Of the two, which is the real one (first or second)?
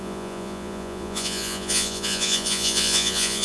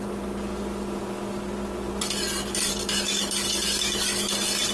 second